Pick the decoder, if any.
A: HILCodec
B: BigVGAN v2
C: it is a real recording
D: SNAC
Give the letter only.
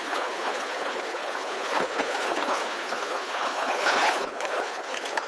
A